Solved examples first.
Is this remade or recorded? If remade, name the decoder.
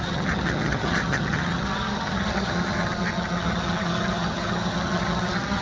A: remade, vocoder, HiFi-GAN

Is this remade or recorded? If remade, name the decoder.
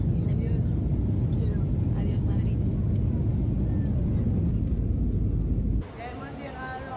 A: recorded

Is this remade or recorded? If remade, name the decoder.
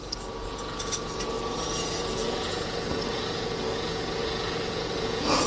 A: remade, vocoder, Vocos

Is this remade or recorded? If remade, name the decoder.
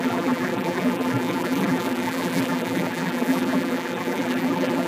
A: remade, vocoder, BigVGAN v2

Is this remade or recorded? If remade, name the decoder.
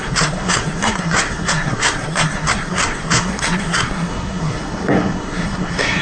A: remade, codec, SNAC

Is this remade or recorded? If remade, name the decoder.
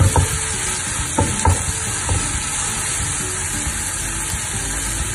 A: recorded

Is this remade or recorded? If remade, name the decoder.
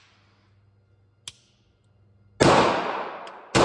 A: recorded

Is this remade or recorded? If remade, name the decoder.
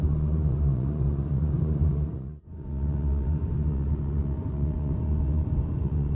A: remade, vocoder, Vocos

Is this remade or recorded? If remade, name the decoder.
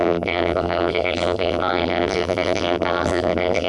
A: remade, vocoder, BigVGAN v2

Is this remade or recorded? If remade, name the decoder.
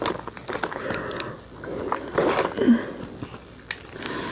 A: recorded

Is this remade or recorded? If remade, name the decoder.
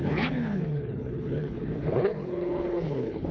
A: remade, codec, HILCodec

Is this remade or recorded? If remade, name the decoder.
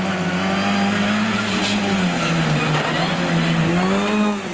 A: recorded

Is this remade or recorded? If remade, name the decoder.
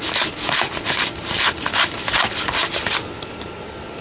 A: recorded